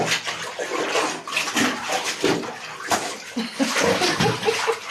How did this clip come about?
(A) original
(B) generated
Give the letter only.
A